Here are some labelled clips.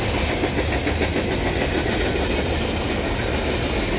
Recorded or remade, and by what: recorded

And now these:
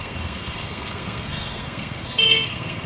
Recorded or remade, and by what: remade, codec, SNAC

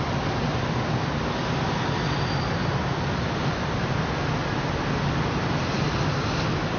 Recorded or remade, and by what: recorded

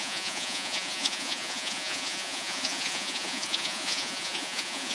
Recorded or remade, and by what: remade, vocoder, Vocos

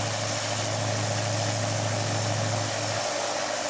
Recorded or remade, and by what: recorded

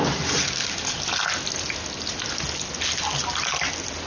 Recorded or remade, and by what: recorded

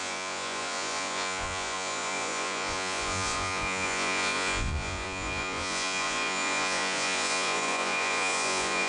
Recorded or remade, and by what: remade, vocoder, Vocos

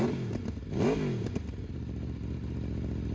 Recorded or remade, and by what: recorded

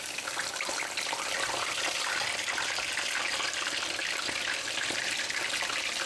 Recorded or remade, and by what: recorded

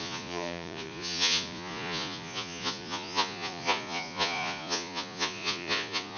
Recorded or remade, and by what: remade, vocoder, Vocos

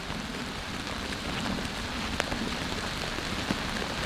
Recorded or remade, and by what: recorded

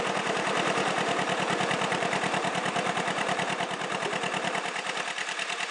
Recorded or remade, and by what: remade, vocoder, BigVGAN v2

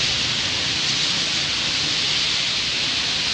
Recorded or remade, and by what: recorded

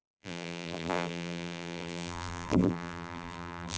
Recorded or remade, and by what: remade, vocoder, BigVGAN v2